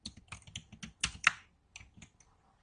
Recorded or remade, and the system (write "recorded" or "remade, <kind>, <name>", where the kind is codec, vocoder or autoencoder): recorded